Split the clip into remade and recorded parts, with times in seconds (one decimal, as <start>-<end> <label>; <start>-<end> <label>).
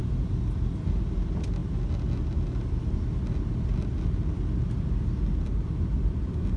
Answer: 0.0-6.6 recorded